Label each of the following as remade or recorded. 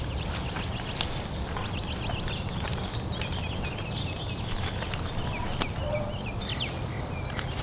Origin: recorded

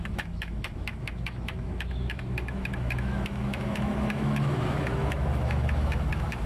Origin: remade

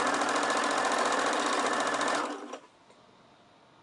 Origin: recorded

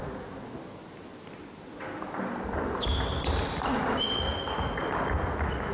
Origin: recorded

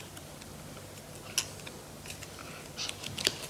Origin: recorded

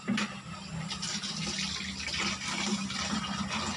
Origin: recorded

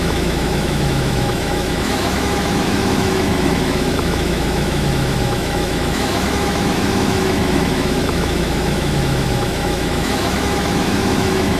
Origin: remade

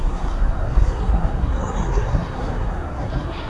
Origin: remade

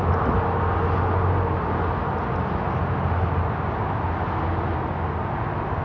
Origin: recorded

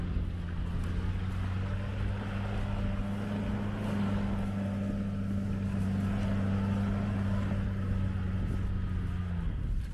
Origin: recorded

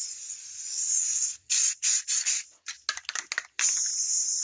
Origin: recorded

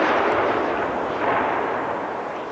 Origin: recorded